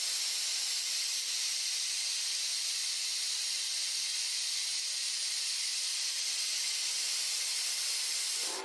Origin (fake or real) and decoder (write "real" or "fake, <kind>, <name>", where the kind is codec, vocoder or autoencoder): real